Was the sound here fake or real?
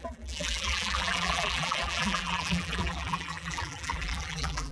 fake